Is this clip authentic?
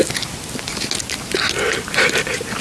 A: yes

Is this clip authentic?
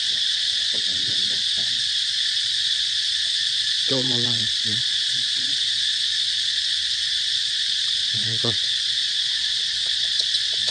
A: no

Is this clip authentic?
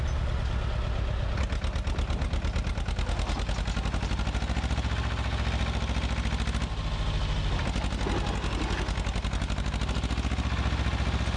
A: yes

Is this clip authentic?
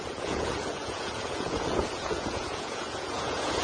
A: no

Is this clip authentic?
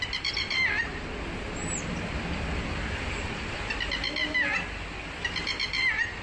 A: yes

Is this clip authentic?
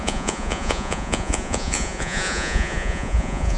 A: no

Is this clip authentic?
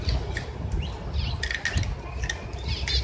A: yes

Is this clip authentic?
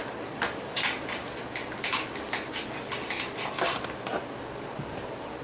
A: yes